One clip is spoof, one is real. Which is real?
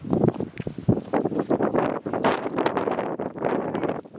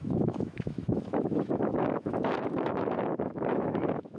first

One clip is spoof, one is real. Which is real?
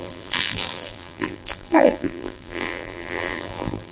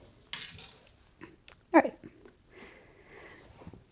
second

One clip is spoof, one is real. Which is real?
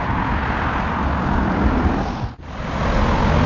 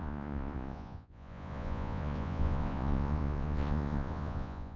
first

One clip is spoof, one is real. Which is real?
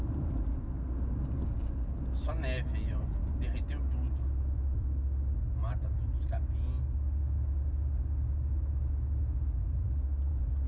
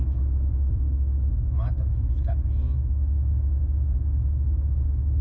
first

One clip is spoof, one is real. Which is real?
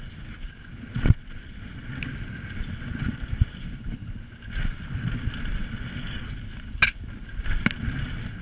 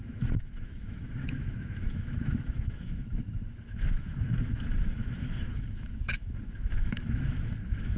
first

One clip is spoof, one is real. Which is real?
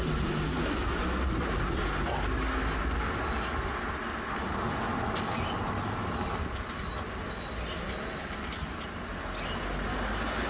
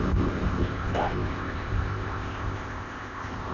first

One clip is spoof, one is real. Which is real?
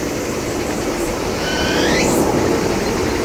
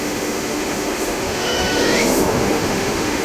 first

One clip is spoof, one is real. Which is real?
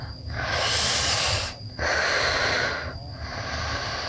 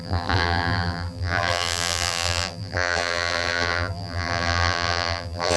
first